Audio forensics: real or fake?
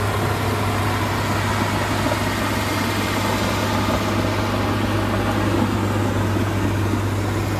real